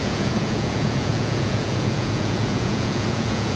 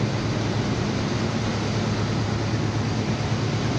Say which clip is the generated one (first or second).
first